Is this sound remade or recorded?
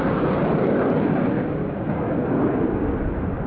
recorded